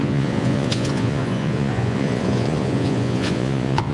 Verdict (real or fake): fake